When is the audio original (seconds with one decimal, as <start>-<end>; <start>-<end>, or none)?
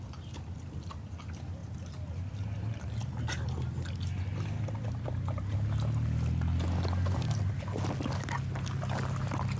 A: 0.0-9.6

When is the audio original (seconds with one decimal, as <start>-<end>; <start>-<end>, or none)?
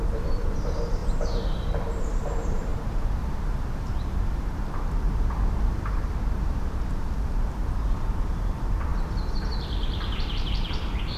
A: none